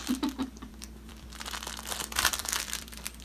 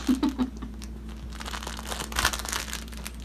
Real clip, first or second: second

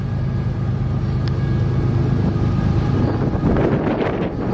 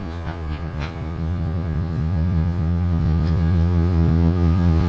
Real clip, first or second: first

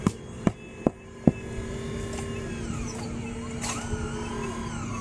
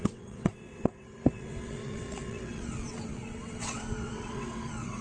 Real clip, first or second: first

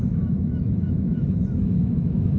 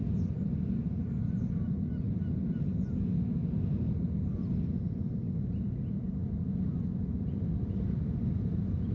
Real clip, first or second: second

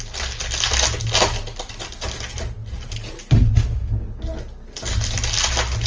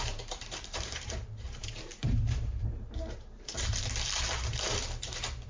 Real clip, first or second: first